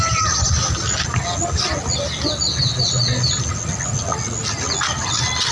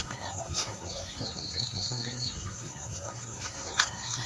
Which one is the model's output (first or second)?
second